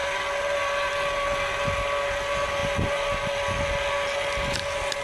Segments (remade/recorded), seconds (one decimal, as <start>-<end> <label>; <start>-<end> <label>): 0.0-5.0 recorded